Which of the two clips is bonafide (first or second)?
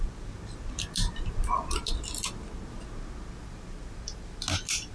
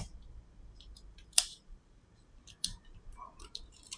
first